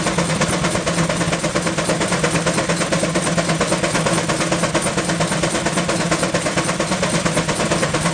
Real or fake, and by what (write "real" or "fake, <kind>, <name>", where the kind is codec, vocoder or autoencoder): real